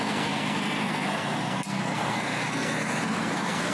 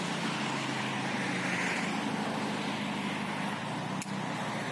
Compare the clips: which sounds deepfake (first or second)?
first